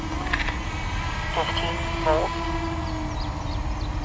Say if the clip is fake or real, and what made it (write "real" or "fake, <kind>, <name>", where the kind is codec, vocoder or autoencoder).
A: real